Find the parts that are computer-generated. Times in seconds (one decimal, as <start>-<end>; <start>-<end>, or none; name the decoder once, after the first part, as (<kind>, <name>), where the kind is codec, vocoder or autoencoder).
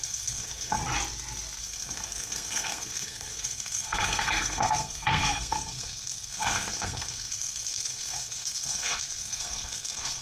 0.0-0.8 (codec, SNAC); 1.6-10.2